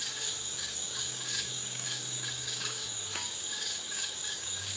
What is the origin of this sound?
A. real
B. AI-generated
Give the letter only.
B